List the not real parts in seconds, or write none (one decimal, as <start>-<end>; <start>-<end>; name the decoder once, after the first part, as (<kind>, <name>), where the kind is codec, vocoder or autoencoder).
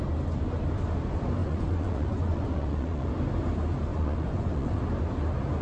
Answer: 1.4-3.1 (vocoder, Vocos); 3.9-4.8